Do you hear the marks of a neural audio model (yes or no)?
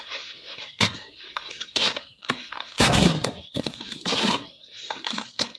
yes